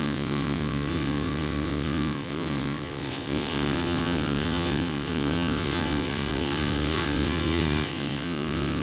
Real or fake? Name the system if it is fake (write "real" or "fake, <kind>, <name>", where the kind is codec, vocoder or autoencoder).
fake, vocoder, WaveNeXt